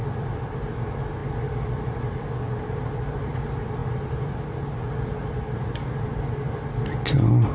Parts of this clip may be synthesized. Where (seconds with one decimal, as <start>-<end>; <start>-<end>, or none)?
none